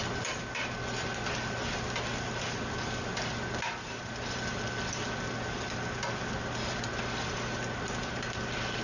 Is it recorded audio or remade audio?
recorded